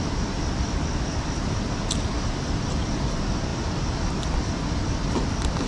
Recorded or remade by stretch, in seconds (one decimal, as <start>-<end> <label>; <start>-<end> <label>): 0.0-5.7 recorded